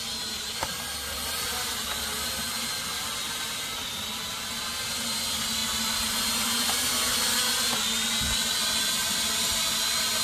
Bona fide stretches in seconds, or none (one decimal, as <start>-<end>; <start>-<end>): 0.0-10.2